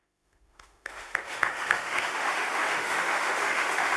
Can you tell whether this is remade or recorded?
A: remade